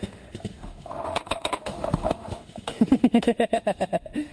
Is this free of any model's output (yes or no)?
no